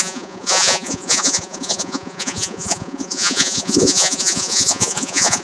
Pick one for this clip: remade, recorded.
remade